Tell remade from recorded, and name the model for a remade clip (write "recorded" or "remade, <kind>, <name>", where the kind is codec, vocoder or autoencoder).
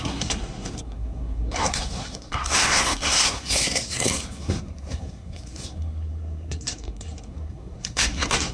remade, codec, SNAC